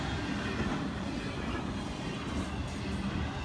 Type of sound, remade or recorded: recorded